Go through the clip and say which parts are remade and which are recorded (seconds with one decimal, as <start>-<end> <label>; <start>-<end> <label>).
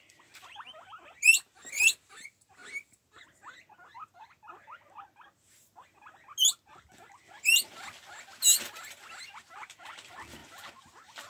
0.0-11.3 recorded